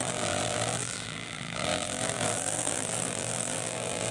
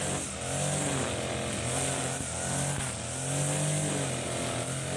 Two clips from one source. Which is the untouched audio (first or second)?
second